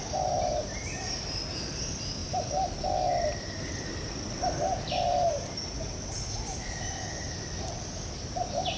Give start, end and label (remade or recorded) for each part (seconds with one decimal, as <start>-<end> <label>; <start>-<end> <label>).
0.0-8.8 recorded